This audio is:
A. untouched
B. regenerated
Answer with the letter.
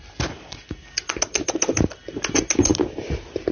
A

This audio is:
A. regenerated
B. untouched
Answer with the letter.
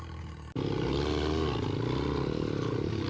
B